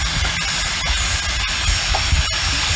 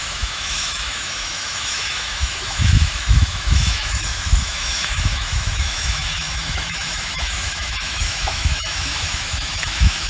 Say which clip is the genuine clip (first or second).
first